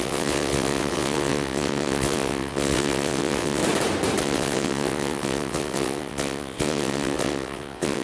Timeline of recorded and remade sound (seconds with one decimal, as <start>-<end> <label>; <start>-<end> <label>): 0.0-3.6 remade; 3.6-4.2 recorded; 4.2-8.0 remade